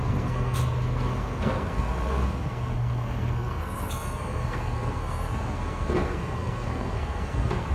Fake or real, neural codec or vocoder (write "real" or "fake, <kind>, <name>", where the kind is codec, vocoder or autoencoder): fake, codec, SNAC